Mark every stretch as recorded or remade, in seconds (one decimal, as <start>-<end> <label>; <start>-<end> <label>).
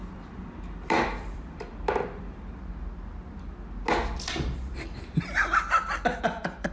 0.0-2.5 remade; 2.5-6.7 recorded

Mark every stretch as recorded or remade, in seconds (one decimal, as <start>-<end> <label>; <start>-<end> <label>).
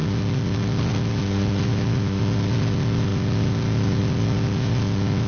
0.0-1.7 recorded; 1.7-2.2 remade; 2.2-5.3 recorded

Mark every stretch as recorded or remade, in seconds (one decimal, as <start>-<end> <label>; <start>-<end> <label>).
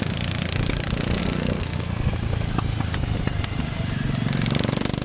0.0-1.2 recorded; 1.2-2.1 remade; 2.1-5.0 recorded